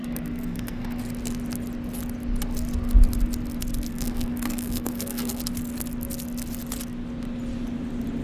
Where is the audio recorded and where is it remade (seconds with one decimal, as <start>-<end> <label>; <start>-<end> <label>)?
0.0-1.0 remade; 1.0-3.9 recorded; 3.9-5.4 remade; 5.4-8.2 recorded